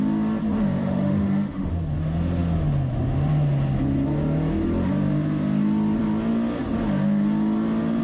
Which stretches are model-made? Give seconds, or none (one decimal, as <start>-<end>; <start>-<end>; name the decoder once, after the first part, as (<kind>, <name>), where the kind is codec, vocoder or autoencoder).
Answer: 0.8-1.7 (autoencoder, DAC-VAE)